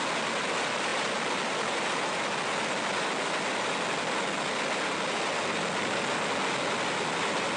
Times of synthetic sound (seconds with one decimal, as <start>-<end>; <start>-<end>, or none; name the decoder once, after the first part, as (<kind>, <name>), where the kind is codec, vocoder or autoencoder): none